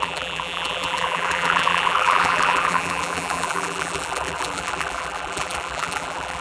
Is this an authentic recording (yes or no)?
no